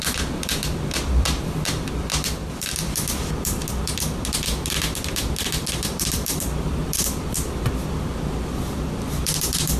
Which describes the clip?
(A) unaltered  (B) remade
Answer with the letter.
B